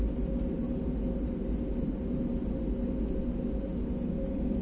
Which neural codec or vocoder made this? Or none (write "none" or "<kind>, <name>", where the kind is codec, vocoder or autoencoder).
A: none